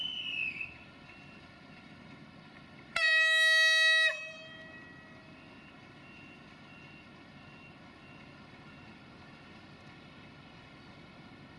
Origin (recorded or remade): recorded